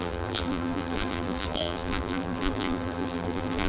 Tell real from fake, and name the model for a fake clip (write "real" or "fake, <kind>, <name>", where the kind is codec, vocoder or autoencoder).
fake, vocoder, BigVGAN v2